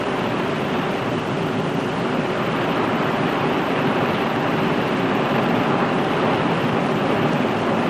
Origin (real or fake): fake